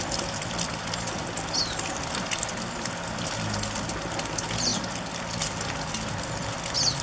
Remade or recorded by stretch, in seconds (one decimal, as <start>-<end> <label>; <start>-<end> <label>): 0.0-7.0 recorded